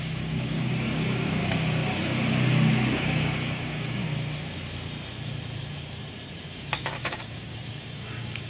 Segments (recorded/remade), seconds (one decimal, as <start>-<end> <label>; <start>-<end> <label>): 0.0-1.4 remade; 1.4-3.0 recorded; 3.0-4.0 remade; 4.0-6.5 recorded; 6.5-8.5 remade